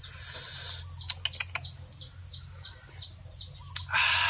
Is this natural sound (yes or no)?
yes